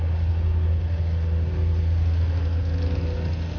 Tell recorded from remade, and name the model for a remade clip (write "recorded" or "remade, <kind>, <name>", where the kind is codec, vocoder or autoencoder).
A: recorded